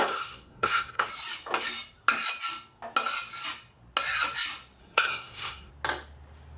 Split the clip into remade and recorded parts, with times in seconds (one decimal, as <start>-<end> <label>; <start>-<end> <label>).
0.0-1.1 remade; 1.1-4.8 recorded; 4.8-5.7 remade; 5.7-6.6 recorded